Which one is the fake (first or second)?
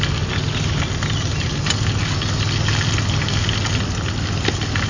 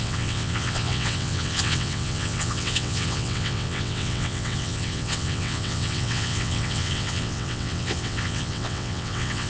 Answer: second